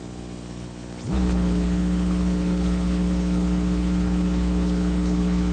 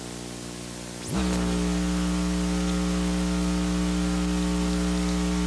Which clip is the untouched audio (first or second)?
second